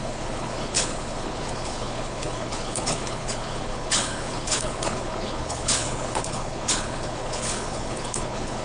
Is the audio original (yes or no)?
no